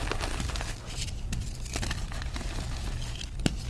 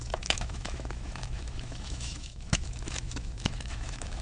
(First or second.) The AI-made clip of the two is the second